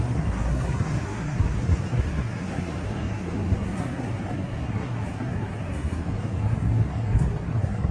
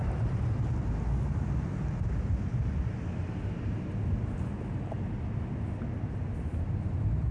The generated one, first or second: first